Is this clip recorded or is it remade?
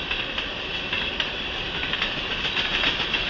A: recorded